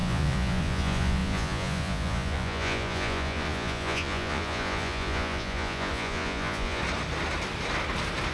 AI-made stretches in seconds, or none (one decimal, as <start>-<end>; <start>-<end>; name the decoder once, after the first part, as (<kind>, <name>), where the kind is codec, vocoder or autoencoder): 0.0-6.8 (vocoder, Vocos)